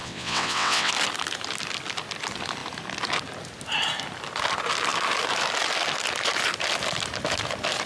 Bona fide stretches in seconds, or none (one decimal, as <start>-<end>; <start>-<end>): 0.9-7.9